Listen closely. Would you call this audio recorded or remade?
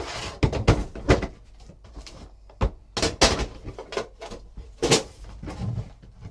recorded